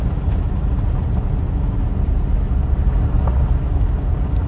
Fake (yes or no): no